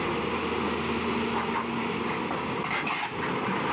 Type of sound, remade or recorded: recorded